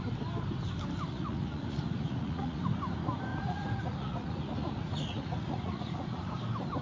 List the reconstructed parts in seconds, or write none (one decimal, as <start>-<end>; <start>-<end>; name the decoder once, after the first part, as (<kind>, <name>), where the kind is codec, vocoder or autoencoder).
1.1-2.6 (vocoder, Vocos); 3.3-6.2